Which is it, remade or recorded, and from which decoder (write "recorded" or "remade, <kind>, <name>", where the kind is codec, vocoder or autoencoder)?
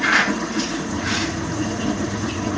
remade, vocoder, Vocos